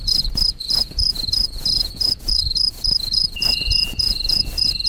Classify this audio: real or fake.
fake